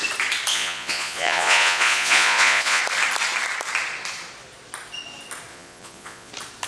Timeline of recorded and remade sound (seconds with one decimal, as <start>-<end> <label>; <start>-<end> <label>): 0.0-0.5 recorded; 0.5-2.8 remade; 2.8-5.5 recorded; 5.5-6.3 remade; 6.3-6.7 recorded